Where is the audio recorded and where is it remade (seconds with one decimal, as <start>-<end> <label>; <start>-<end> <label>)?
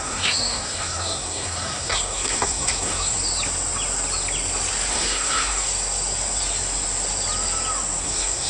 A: 0.0-3.2 remade; 3.2-4.9 recorded; 4.9-5.7 remade; 5.7-8.0 recorded; 8.0-8.5 remade